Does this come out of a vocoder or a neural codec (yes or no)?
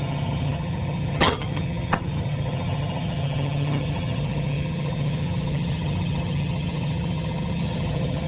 yes